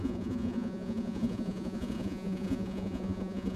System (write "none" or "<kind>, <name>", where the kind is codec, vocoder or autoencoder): vocoder, Vocos